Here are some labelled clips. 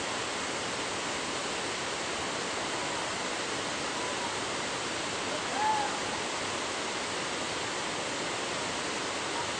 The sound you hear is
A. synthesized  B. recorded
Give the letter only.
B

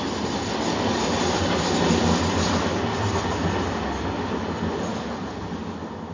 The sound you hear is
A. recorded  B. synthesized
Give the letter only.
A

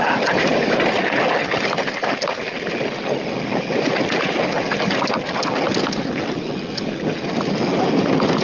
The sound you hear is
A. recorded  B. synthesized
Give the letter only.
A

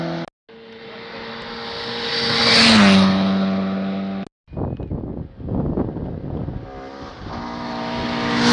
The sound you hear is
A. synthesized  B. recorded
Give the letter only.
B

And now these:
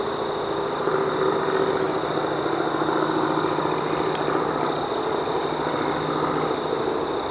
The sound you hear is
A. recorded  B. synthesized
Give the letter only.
A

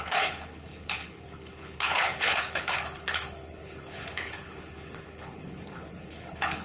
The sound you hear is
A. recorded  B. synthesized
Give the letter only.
B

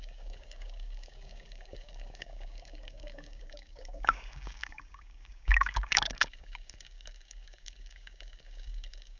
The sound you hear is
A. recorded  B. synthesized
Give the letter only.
B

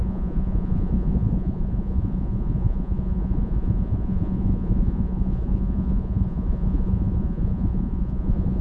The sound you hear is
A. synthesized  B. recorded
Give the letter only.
A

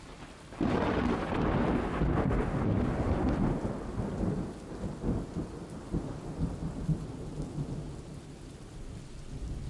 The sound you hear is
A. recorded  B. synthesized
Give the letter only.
A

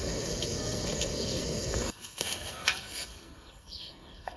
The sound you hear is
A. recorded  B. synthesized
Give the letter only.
B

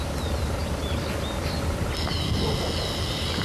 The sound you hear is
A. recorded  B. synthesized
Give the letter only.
A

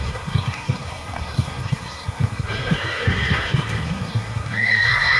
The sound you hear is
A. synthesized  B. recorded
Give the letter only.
A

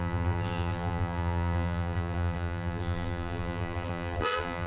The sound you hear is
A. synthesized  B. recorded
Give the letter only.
A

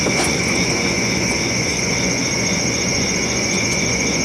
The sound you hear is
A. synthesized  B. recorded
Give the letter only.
A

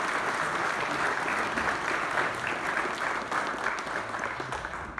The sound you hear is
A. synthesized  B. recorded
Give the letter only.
B